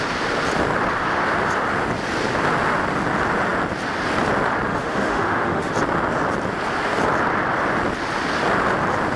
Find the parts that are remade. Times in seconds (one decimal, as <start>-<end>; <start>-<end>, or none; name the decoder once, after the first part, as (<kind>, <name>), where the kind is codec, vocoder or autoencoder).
4.7-5.7 (autoencoder, DAC-VAE)